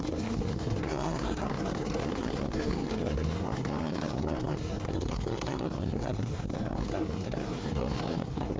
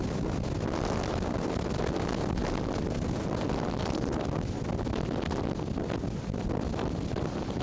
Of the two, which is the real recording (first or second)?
second